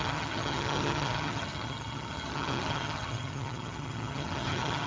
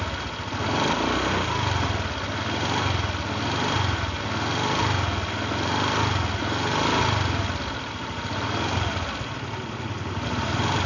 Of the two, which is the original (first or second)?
second